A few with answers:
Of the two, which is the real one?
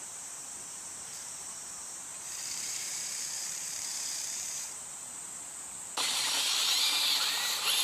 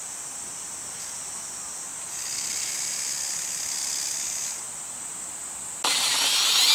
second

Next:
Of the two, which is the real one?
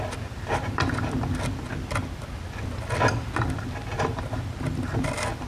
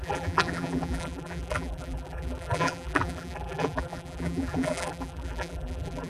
first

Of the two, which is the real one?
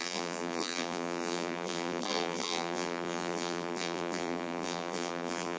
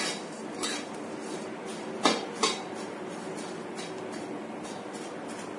second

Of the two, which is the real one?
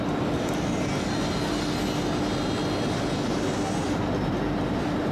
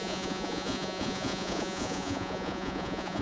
first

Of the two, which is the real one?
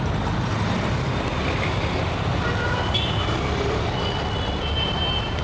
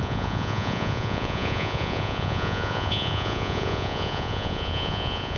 first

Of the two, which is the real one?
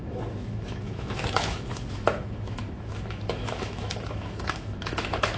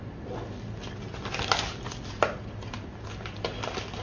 second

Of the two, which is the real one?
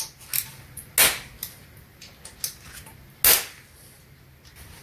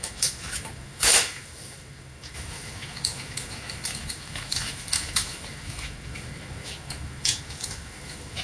first